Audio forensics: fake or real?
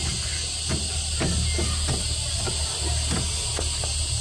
real